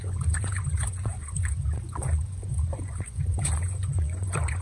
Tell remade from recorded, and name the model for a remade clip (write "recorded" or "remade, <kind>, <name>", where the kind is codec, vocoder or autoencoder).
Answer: remade, vocoder, Vocos